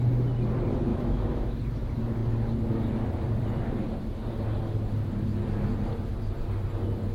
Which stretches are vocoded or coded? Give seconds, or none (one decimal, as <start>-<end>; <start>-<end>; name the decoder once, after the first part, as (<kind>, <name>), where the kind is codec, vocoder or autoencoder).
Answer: 0.9-1.6 (autoencoder, DAC-VAE)